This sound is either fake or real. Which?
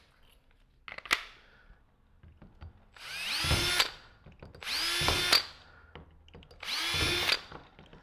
real